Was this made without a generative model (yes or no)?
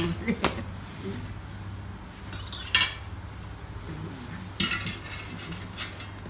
yes